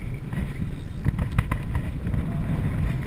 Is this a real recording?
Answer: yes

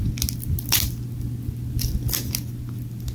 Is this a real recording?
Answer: yes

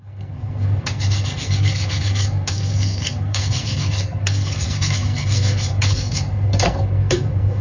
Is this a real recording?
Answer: no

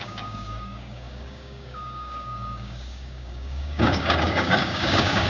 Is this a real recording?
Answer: no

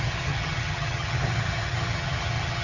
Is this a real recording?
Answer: no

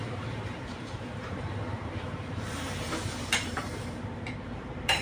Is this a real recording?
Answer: no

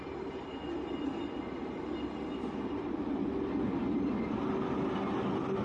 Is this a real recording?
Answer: yes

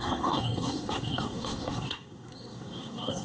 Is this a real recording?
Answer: no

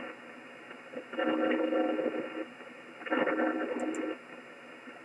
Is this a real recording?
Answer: yes